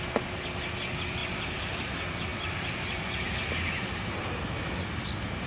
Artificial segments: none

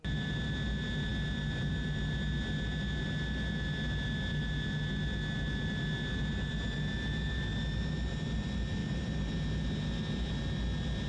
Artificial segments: 8.8-9.3 (vocoder, BigVGAN v2)

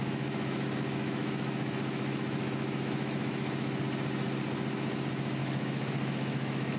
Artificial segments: 0.0-3.8 (autoencoder, DAC-VAE); 5.4-6.8

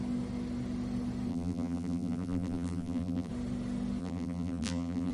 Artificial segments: 1.3-3.3 (vocoder, BigVGAN v2); 4.0-5.1

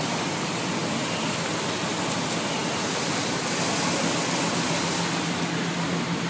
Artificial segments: none

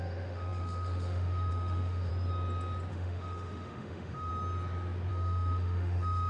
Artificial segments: 0.0-2.1 (autoencoder, DAC-VAE); 2.9-4.3; 5.1-6.3

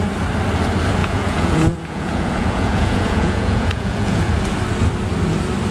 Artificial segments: 1.0-4.4 (vocoder, Vocos)